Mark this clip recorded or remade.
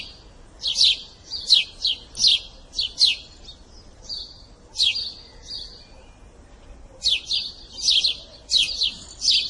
recorded